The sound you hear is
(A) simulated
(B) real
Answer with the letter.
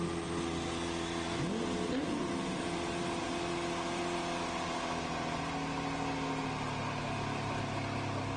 B